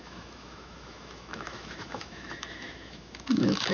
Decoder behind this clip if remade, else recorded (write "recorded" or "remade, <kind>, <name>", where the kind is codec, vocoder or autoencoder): remade, autoencoder, DAC-VAE